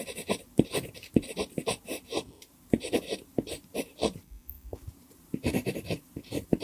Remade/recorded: remade